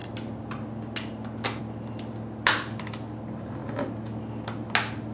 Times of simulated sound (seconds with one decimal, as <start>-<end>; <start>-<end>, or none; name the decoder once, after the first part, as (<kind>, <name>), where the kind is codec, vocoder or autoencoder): none